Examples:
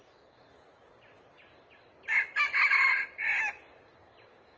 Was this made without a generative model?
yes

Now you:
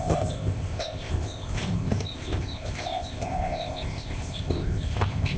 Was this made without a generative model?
no